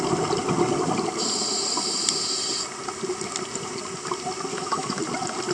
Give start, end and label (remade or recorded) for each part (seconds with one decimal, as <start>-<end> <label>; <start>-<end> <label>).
0.0-4.5 recorded; 4.5-5.0 remade; 5.0-5.5 recorded